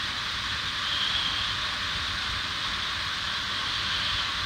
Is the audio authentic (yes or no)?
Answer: yes